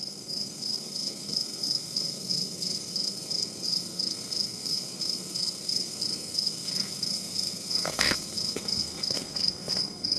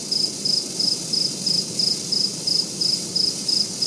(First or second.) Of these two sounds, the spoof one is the first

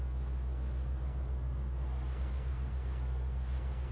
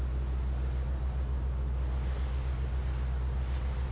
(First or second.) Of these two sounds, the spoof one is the first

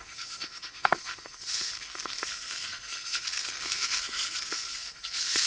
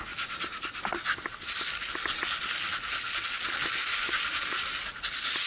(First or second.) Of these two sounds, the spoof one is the first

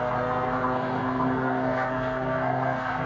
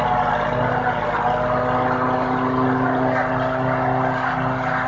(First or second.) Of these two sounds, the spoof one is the first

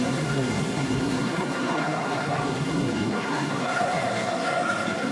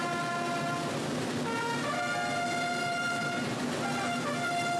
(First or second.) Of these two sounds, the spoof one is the first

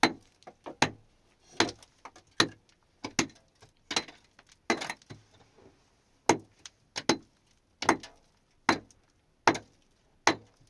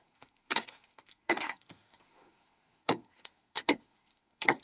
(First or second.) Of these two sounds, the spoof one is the second